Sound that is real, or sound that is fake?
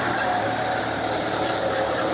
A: fake